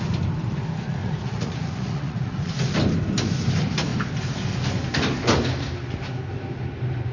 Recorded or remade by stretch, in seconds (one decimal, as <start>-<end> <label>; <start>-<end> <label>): 0.0-1.0 recorded; 1.0-2.5 remade; 2.5-7.1 recorded